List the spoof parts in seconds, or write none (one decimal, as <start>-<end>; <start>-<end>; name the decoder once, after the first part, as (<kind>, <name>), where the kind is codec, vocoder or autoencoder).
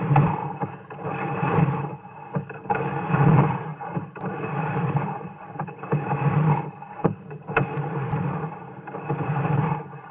0.0-0.4 (vocoder, BigVGAN v2); 1.1-10.1